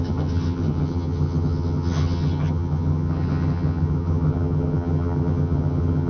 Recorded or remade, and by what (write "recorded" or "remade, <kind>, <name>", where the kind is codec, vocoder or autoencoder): remade, vocoder, HiFi-GAN